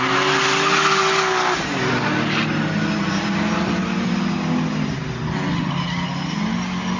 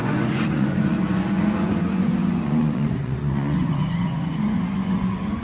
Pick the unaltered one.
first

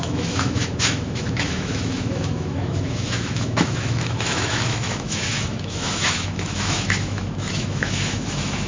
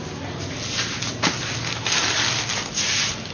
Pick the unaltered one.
second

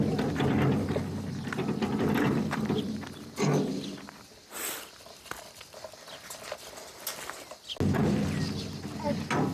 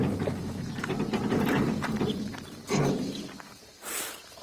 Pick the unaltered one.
first